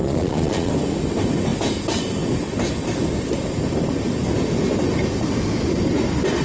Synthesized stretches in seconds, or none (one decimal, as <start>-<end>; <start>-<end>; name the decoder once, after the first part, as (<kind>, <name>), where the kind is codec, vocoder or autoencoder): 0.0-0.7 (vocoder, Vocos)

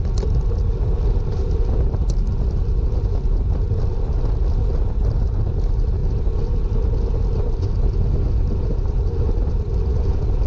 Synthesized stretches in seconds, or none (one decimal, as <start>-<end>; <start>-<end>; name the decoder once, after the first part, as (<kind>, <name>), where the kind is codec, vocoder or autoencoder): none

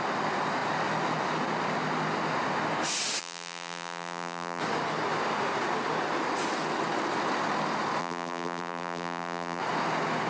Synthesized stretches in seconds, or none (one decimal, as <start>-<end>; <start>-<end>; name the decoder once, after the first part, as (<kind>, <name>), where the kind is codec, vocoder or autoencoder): 3.2-4.6 (vocoder, BigVGAN v2); 8.0-9.6

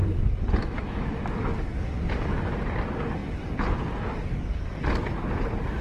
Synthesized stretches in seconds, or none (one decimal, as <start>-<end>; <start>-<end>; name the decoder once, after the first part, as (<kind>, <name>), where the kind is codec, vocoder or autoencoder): 0.6-1.2 (autoencoder, DAC-VAE)

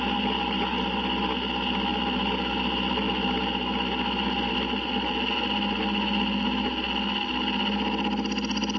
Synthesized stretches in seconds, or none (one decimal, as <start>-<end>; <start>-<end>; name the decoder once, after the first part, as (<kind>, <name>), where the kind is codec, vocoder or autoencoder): none

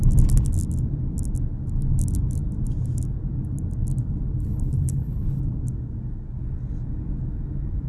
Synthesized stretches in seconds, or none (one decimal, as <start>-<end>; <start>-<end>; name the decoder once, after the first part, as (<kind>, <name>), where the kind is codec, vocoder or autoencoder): 4.4-5.4 (codec, HILCodec)